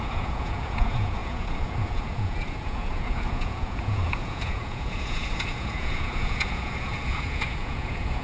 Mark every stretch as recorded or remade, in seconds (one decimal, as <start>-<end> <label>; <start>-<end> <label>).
0.0-8.2 remade